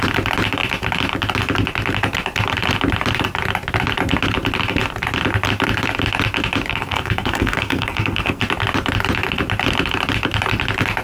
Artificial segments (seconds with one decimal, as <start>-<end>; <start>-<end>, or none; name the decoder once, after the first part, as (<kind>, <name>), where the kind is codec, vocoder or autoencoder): 6.7-8.4 (codec, SNAC)